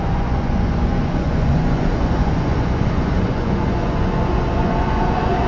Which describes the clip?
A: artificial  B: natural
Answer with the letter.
A